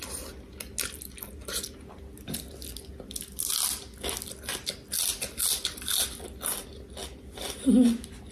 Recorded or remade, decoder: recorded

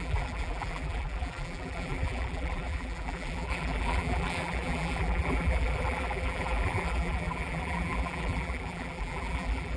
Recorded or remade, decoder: remade, vocoder, BigVGAN v2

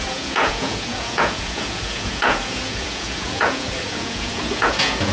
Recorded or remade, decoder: remade, vocoder, Vocos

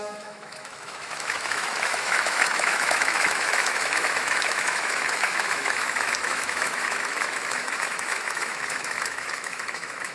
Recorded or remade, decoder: remade, autoencoder, DAC-VAE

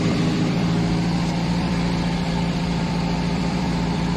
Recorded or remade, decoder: remade, vocoder, BigVGAN v2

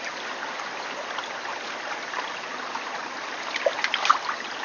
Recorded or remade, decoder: recorded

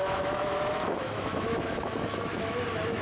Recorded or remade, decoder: remade, autoencoder, DAC-VAE